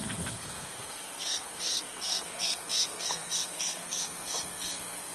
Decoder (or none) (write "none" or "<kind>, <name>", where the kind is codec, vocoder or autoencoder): codec, SNAC